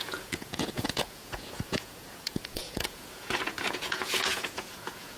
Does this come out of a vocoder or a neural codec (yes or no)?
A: yes